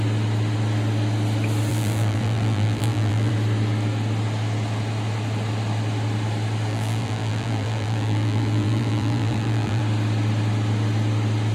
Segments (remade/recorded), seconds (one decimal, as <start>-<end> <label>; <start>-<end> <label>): 0.0-1.7 recorded; 1.7-3.3 remade; 3.3-6.7 recorded; 6.7-9.8 remade; 9.8-11.5 recorded